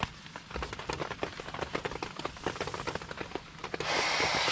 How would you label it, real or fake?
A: real